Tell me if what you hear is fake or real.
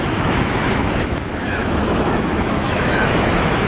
fake